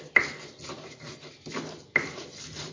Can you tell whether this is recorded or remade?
recorded